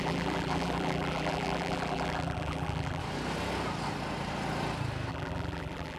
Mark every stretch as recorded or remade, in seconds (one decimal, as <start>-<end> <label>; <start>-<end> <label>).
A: 0.0-3.0 remade; 3.0-5.1 recorded; 5.1-6.0 remade